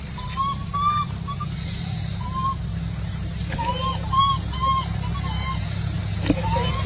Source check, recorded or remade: recorded